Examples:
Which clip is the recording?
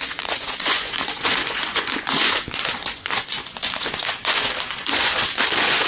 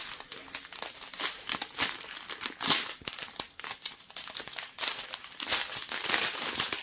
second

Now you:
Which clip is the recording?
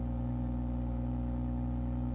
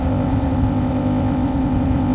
first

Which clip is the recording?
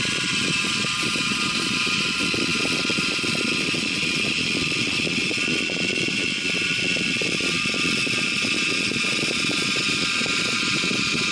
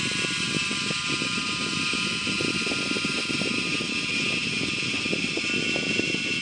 second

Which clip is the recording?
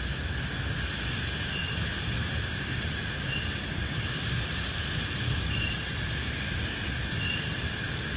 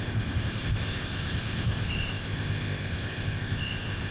first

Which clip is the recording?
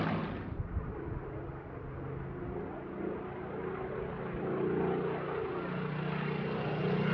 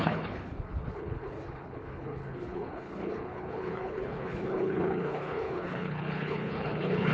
first